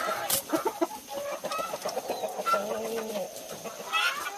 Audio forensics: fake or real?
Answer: real